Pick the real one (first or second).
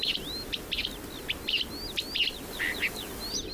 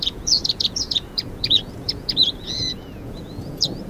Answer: first